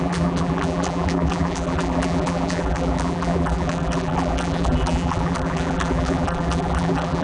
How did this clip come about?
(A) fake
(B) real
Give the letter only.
A